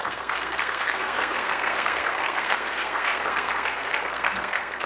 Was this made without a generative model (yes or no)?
no